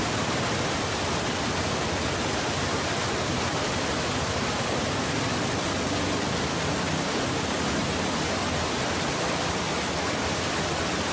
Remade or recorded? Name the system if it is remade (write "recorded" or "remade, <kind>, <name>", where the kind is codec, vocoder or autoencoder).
recorded